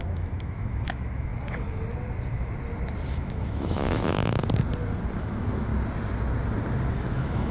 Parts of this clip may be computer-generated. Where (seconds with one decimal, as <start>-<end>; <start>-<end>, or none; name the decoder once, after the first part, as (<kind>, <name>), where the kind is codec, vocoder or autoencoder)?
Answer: 0.0-1.3 (autoencoder, DAC-VAE); 3.1-4.4; 5.2-5.7; 6.9-7.5